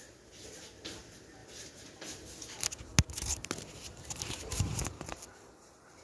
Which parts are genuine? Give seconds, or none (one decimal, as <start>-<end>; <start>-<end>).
0.0-6.0

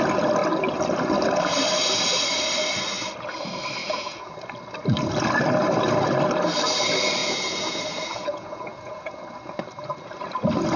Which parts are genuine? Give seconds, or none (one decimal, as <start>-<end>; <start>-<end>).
0.0-3.8; 4.3-7.2; 9.2-10.8

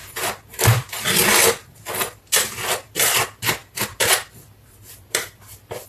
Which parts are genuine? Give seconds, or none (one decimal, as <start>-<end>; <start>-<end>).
none

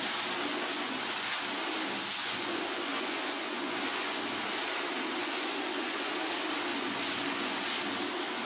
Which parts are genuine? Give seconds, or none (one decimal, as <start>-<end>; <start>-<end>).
0.0-0.5; 1.3-2.2; 4.2-5.2; 6.1-6.7; 7.6-8.5